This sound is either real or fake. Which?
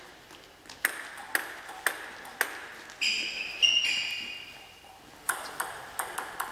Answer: real